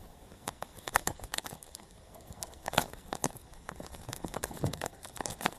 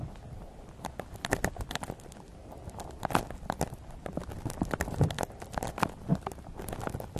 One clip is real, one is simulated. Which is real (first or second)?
second